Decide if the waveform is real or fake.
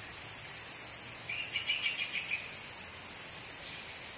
real